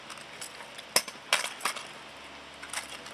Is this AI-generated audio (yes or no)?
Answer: no